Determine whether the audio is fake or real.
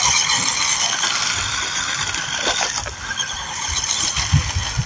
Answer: real